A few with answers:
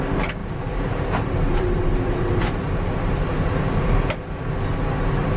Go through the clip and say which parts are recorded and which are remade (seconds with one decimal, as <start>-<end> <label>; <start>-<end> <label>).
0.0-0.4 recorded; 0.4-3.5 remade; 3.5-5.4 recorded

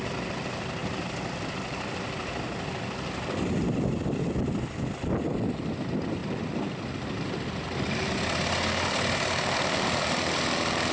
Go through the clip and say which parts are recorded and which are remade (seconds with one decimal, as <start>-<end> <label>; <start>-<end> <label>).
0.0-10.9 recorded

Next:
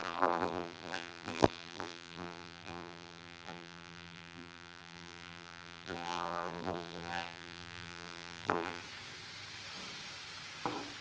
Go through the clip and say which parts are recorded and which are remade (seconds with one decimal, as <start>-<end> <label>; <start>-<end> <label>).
0.0-8.8 remade; 8.8-11.0 recorded